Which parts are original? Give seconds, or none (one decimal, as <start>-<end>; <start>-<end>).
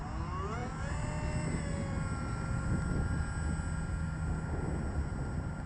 0.0-5.7